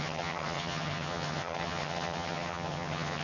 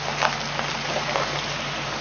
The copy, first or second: first